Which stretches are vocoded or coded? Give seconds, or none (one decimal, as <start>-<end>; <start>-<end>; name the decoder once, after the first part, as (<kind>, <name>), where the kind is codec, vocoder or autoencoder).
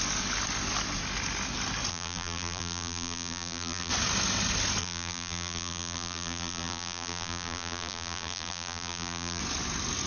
1.9-3.9 (vocoder, BigVGAN v2); 4.8-9.4